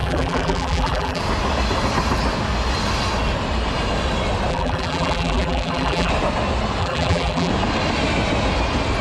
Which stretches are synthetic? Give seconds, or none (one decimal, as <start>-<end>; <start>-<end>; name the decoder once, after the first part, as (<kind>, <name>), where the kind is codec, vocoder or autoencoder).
0.0-1.2 (vocoder, BigVGAN v2); 4.5-6.1; 6.8-7.5